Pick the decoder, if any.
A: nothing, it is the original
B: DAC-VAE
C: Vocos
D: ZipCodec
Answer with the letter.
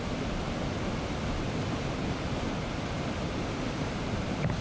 A